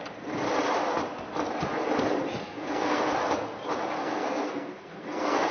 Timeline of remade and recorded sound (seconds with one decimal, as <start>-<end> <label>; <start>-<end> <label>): 0.0-2.4 recorded; 2.4-3.1 remade; 3.1-4.0 recorded; 4.0-5.5 remade